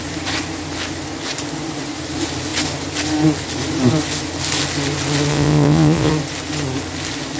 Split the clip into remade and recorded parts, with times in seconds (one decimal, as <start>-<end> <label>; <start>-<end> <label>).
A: 0.0-5.3 recorded; 5.3-6.1 remade; 6.1-7.4 recorded

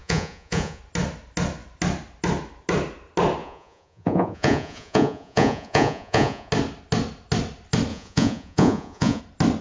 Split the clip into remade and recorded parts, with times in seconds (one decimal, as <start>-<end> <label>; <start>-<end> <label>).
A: 0.0-0.8 remade; 0.8-3.4 recorded; 3.4-6.5 remade; 6.5-7.9 recorded; 7.9-9.2 remade; 9.2-9.6 recorded

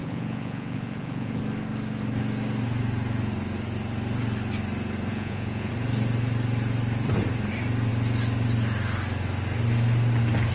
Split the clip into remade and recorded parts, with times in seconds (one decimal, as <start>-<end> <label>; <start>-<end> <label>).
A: 0.0-1.4 remade; 1.4-5.1 recorded; 5.1-5.7 remade; 5.7-10.5 recorded

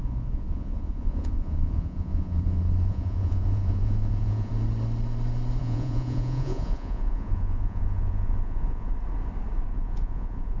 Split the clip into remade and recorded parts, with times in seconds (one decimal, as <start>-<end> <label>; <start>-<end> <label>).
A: 0.0-4.5 remade; 4.5-5.6 recorded; 5.6-8.9 remade; 8.9-9.7 recorded; 9.7-10.6 remade

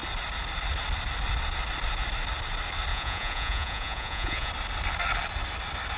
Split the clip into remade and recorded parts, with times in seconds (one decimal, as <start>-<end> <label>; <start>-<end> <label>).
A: 0.0-2.9 recorded; 2.9-4.5 remade; 4.5-6.0 recorded

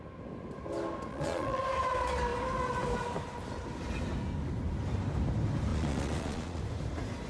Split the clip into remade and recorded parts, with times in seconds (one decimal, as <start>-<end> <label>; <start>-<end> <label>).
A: 0.0-1.1 recorded; 1.1-1.6 remade; 1.6-5.7 recorded; 5.7-6.6 remade; 6.6-7.3 recorded

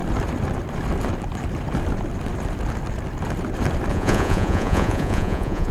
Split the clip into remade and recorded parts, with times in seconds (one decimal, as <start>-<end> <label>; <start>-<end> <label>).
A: 0.0-3.9 recorded; 3.9-5.7 remade